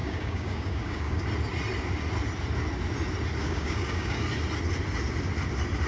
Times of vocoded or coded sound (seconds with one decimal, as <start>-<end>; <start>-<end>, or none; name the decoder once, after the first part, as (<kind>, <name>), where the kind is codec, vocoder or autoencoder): 0.0-1.2 (codec, DAC); 3.4-4.2